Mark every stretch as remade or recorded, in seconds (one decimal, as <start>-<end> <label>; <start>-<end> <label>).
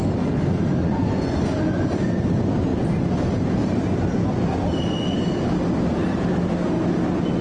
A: 0.0-0.8 recorded; 0.8-1.4 remade; 1.4-7.4 recorded